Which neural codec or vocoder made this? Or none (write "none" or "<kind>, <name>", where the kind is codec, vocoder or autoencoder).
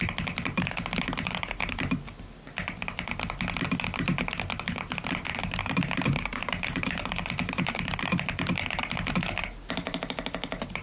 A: none